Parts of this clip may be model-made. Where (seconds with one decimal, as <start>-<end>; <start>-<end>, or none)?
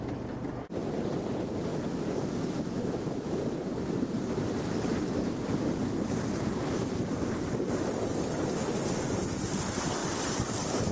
1.7-3.4